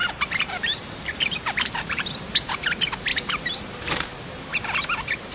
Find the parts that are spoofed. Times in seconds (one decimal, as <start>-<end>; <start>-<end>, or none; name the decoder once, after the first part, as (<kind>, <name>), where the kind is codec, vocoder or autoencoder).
0.0-2.7 (vocoder, BigVGAN v2); 3.1-4.8